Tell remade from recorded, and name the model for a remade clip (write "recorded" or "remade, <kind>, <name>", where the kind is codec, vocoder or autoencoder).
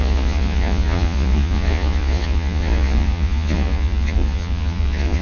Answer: remade, vocoder, Vocos